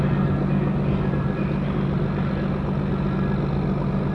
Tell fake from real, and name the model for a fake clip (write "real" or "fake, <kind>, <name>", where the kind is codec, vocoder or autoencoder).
real